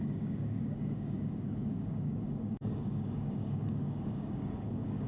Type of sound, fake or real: fake